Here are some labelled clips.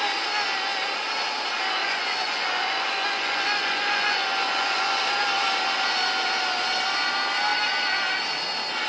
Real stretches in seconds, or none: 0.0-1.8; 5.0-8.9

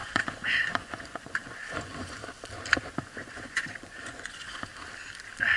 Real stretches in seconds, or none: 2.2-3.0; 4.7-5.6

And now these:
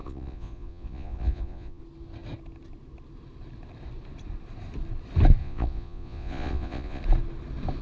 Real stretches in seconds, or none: 1.8-5.4; 7.0-7.8

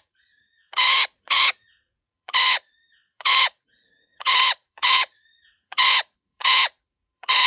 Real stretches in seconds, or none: none